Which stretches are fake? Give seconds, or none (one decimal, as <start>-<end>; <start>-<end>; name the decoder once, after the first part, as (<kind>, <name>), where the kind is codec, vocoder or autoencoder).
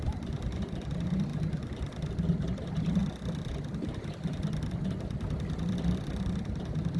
0.0-1.3 (vocoder, BigVGAN v2); 2.1-3.0; 4.7-7.0